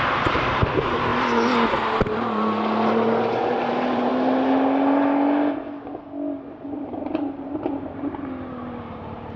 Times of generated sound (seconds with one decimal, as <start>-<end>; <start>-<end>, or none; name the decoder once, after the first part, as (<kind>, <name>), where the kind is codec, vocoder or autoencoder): 0.0-1.1 (vocoder, BigVGAN v2); 3.6-4.1; 6.8-9.4